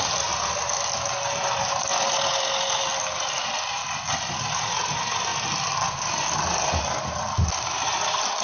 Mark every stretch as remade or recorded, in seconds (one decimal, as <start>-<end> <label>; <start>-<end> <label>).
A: 0.0-8.4 recorded